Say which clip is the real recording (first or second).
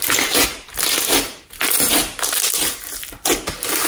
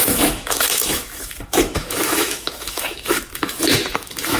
first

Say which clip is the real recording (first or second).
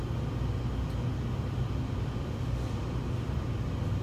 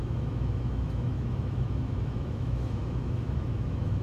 first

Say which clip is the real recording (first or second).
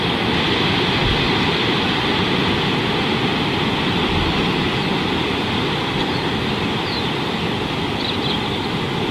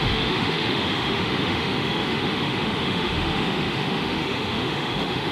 first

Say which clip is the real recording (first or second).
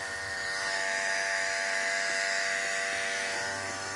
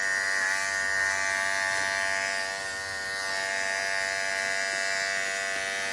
second